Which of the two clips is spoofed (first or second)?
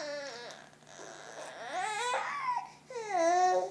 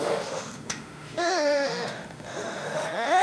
second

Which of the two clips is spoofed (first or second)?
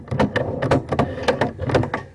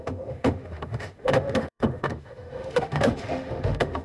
second